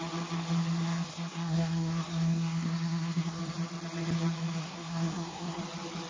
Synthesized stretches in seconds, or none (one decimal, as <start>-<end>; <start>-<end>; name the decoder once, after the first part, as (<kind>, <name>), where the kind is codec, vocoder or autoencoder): 1.1-3.4 (codec, SNAC); 4.6-5.6